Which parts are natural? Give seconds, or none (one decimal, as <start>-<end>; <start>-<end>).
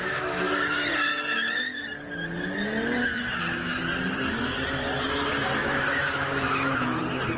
0.0-1.1; 1.8-3.0; 3.8-5.6; 7.0-7.4